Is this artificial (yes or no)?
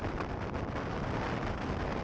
no